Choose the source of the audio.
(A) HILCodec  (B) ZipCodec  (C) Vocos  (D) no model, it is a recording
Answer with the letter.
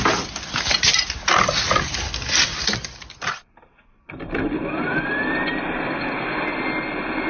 D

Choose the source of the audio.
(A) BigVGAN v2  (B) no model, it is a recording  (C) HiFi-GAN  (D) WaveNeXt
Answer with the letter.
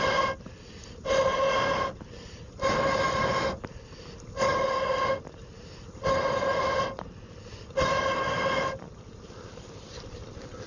B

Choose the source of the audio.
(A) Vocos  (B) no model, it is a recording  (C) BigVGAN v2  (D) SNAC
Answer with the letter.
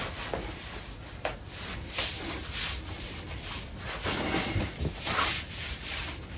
B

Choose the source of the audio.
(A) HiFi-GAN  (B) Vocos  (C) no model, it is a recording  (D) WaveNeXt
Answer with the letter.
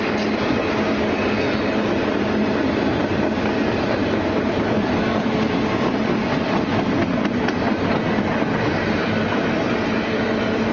C